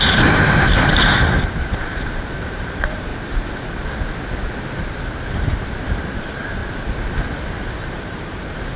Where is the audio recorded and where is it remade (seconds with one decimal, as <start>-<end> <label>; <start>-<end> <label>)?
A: 0.0-3.1 remade; 3.1-5.0 recorded; 5.0-6.6 remade; 6.6-7.6 recorded; 7.6-8.8 remade

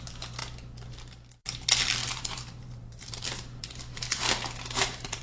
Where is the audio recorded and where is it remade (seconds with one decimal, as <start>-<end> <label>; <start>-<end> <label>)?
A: 0.0-2.0 recorded; 2.0-5.2 remade

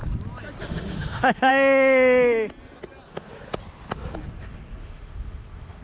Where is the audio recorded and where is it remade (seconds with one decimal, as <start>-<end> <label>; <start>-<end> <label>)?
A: 0.0-0.6 recorded; 0.6-1.5 remade; 1.5-4.8 recorded; 4.8-5.8 remade

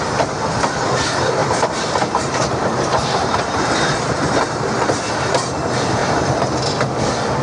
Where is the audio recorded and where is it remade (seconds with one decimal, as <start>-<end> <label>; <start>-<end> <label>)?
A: 0.0-1.4 recorded; 1.4-5.1 remade; 5.1-6.0 recorded; 6.0-6.5 remade; 6.5-7.4 recorded

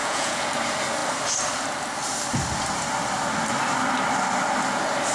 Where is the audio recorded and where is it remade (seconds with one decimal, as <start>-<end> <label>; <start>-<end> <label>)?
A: 0.0-0.5 remade; 0.5-5.1 recorded

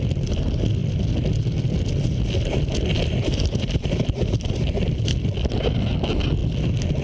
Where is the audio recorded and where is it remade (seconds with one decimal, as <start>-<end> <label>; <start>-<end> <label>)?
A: 0.0-0.8 recorded; 0.8-5.0 remade; 5.0-7.0 recorded

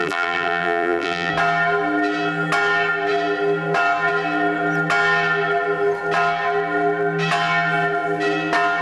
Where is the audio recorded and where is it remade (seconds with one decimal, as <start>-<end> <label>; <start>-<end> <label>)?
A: 0.0-1.3 remade; 1.3-8.8 recorded

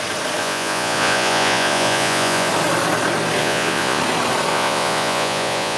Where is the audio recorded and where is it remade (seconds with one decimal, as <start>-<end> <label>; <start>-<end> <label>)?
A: 0.0-0.4 recorded; 0.4-2.5 remade; 2.5-3.4 recorded; 3.4-4.0 remade; 4.0-4.5 recorded; 4.5-5.8 remade